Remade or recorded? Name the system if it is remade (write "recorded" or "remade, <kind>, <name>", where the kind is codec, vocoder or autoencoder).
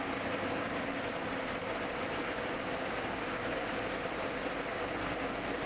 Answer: recorded